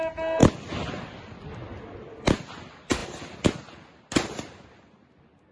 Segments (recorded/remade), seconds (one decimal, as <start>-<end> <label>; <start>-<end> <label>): 0.0-5.5 recorded